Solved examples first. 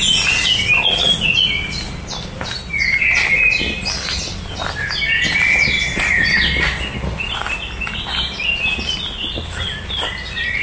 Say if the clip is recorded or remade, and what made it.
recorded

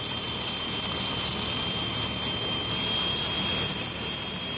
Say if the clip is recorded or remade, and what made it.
recorded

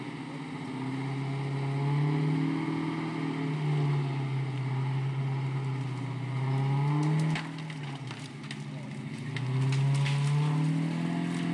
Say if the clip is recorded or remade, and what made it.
recorded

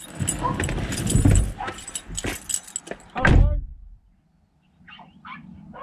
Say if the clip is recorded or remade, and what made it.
recorded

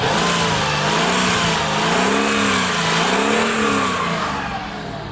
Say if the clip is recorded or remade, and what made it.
recorded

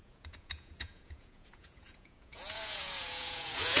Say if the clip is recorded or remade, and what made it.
remade, vocoder, Vocos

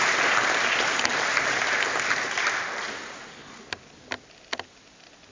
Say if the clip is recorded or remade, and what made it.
recorded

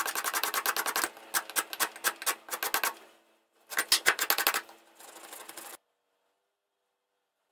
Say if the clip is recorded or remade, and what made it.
recorded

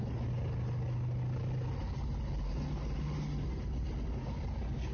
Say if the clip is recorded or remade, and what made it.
recorded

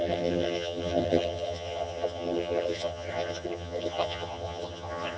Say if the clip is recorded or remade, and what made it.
remade, vocoder, HiFi-GAN